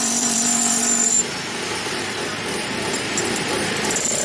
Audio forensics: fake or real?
fake